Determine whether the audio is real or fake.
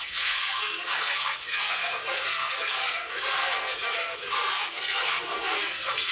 fake